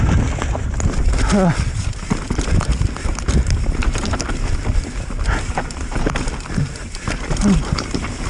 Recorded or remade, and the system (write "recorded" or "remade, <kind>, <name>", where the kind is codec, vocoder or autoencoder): recorded